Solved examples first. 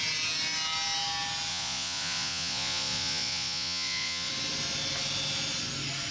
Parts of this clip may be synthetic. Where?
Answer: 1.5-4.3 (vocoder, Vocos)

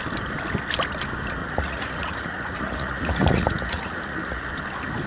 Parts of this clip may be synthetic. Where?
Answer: 1.4-4.5 (vocoder, Vocos)

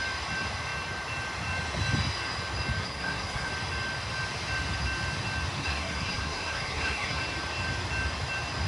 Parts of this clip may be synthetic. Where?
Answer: 2.8-3.5 (codec, SNAC); 5.6-7.2

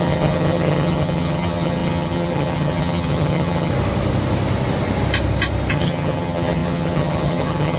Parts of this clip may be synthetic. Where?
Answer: 0.0-3.7 (vocoder, HiFi-GAN); 5.7-7.8

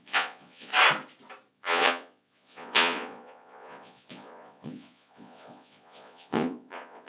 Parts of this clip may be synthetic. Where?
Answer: 0.0-0.7 (vocoder, Vocos); 1.5-7.1

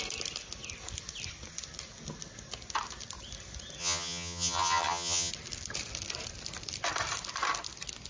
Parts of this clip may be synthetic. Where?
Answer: 3.8-5.3 (vocoder, HiFi-GAN)